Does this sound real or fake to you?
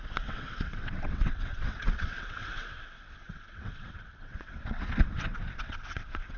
fake